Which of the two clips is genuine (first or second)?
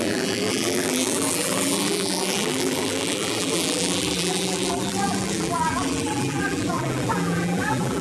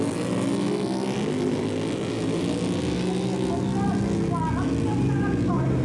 second